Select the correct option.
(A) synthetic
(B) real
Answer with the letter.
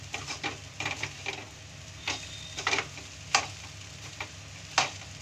B